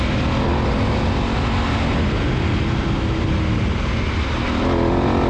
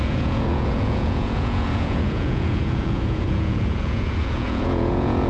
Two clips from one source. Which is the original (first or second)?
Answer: first